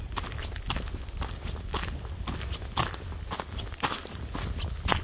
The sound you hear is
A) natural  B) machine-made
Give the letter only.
A